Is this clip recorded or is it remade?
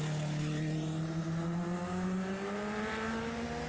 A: recorded